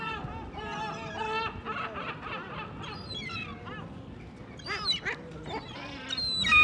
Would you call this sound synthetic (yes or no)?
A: no